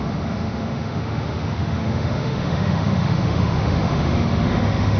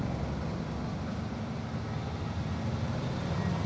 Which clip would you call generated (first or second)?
first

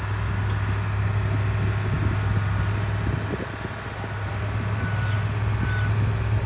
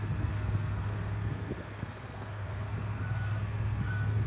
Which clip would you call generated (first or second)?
second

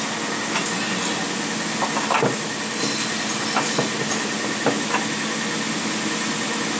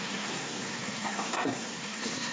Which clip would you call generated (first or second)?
second